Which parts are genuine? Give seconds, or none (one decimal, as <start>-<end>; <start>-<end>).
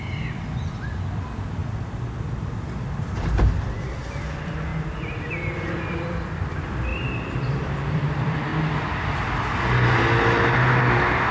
1.6-3.0; 4.7-5.7; 8.5-11.3